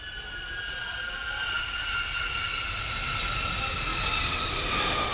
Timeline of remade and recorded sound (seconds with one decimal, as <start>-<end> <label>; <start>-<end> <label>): 0.0-5.1 recorded